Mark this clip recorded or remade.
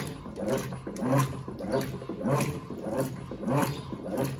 recorded